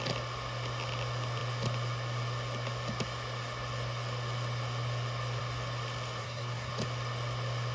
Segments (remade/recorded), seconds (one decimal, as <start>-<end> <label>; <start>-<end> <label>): 0.0-6.2 recorded; 6.2-6.7 remade; 6.7-7.7 recorded

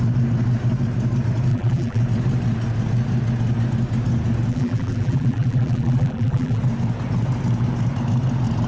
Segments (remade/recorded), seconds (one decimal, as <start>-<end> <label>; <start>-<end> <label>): 0.0-1.5 recorded; 1.5-2.0 remade; 2.0-4.5 recorded; 4.5-6.6 remade; 6.6-8.7 recorded